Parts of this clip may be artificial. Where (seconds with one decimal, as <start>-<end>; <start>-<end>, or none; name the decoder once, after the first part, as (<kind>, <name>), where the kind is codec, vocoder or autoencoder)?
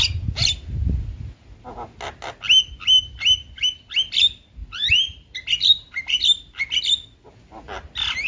4.6-6.8 (vocoder, BigVGAN v2)